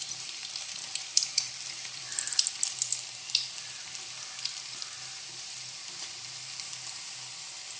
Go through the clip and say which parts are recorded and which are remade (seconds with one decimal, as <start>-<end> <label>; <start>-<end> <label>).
0.0-7.8 remade